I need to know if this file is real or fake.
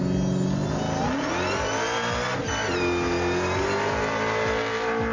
real